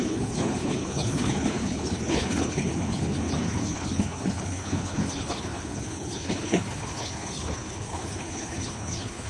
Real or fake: fake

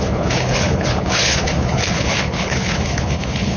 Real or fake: fake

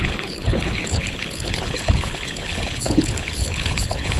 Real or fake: fake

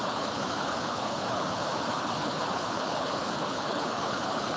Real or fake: fake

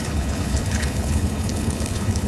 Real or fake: fake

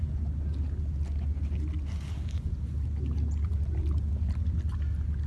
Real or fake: real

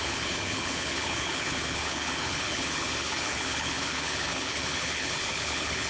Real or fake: fake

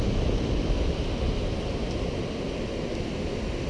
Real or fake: real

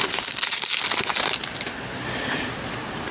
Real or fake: real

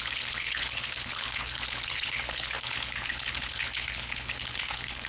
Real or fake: fake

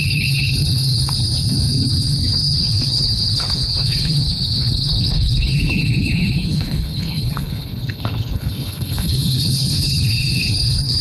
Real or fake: fake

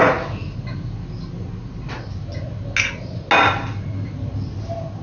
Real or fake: real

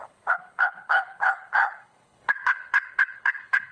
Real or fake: fake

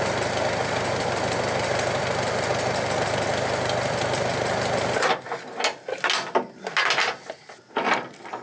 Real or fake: real